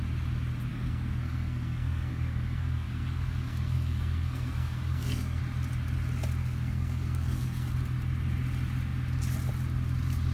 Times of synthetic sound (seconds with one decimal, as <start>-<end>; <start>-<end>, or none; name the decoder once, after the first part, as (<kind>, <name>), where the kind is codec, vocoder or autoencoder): 0.7-5.4 (codec, SNAC); 6.4-7.7